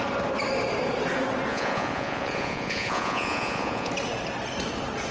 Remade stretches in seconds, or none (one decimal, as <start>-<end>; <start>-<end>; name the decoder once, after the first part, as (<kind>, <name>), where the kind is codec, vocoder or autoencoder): 1.5-3.9 (vocoder, Vocos)

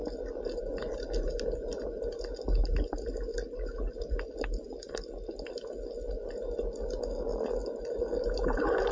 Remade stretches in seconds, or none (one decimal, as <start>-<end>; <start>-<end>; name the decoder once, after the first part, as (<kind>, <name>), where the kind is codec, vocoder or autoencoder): none